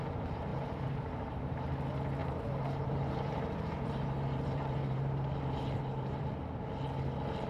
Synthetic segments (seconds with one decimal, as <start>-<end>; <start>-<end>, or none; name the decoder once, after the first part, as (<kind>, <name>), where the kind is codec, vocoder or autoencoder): 0.5-1.6 (vocoder, BigVGAN v2); 2.2-6.2